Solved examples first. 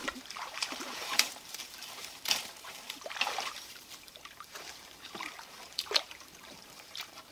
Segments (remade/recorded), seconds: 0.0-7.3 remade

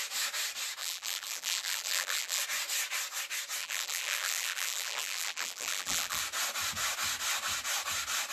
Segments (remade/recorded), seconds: 0.0-0.8 recorded; 0.8-2.4 remade; 2.4-3.6 recorded; 3.6-6.2 remade; 6.2-8.3 recorded

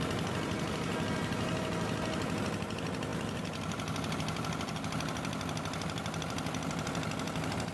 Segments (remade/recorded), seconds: 0.0-7.7 recorded

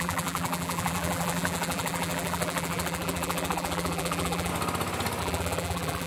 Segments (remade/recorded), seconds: 0.0-4.5 remade; 4.5-5.2 recorded; 5.2-6.1 remade

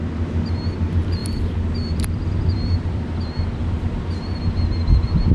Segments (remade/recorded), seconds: 0.0-1.2 recorded; 1.2-4.4 remade; 4.4-5.3 recorded

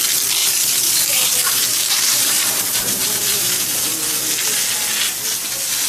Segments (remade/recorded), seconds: 0.0-0.4 recorded; 0.4-3.9 remade; 3.9-5.9 recorded

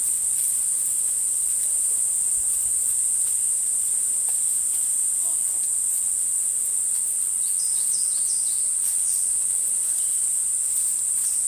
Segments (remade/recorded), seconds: 0.0-5.0 remade; 5.0-7.6 recorded; 7.6-8.7 remade; 8.7-9.8 recorded; 9.8-11.5 remade